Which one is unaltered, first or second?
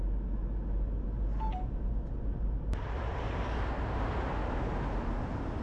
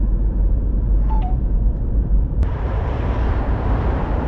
first